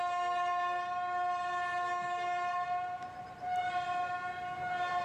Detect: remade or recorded recorded